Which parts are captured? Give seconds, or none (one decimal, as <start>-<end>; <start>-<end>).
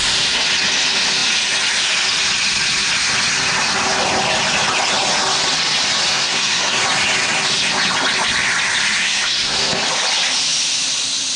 0.0-6.1; 6.8-9.0; 9.7-11.4